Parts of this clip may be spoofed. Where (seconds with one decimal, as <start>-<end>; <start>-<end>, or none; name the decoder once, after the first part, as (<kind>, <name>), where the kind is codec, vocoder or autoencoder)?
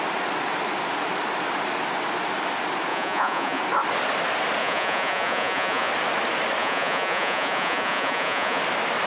2.9-3.6 (vocoder, Vocos); 4.6-5.9; 6.6-8.6